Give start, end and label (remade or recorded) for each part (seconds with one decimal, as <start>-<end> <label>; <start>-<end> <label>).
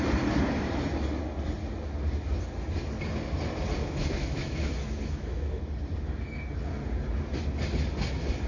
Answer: 0.0-3.8 recorded; 3.8-5.6 remade; 5.6-8.5 recorded